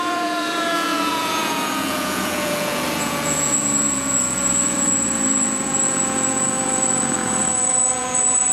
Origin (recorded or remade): remade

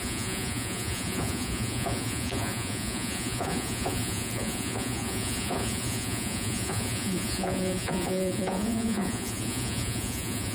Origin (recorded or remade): remade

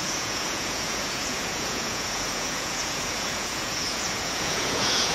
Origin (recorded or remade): remade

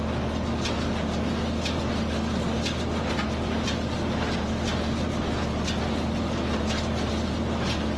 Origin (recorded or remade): recorded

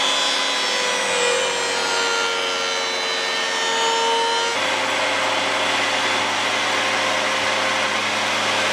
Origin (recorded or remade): recorded